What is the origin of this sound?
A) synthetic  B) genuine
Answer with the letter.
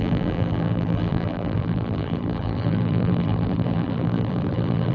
A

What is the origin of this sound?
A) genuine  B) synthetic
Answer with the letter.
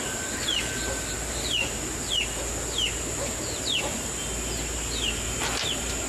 A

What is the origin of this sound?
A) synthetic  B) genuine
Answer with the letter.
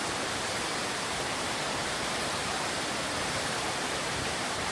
A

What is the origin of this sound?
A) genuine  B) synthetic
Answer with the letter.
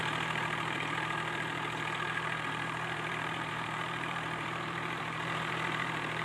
B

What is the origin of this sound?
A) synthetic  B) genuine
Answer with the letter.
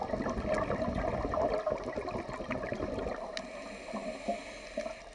B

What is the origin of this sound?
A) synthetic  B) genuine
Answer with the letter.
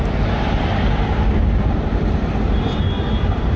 A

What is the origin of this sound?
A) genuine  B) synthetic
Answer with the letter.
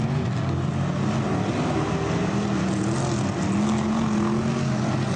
A